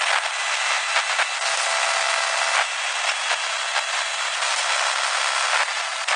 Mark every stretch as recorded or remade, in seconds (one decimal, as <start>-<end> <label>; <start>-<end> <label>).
0.0-6.2 recorded